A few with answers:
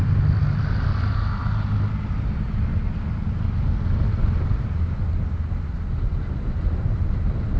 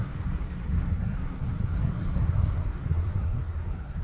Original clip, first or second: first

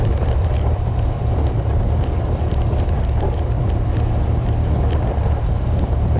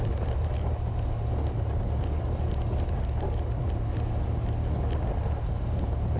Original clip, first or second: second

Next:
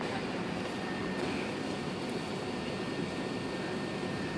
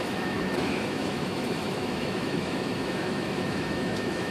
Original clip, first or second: first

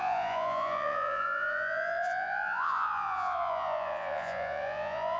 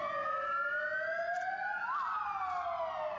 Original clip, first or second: second